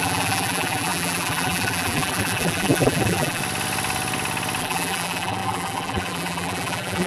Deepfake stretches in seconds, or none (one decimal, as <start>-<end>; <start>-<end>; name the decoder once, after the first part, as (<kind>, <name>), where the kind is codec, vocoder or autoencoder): 0.0-3.4 (vocoder, BigVGAN v2); 4.6-7.1

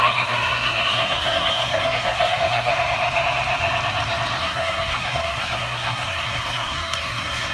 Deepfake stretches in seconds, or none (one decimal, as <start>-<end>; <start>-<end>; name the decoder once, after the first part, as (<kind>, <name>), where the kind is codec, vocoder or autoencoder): 0.0-2.7 (codec, SNAC); 4.4-7.5

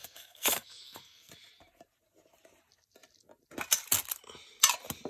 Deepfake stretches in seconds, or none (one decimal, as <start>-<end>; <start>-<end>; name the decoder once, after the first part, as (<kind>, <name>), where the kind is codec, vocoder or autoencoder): 0.0-1.3 (codec, SNAC)